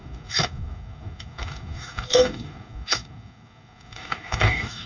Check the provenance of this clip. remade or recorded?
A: remade